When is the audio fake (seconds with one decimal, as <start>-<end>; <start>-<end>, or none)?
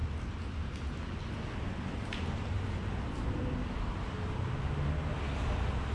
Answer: none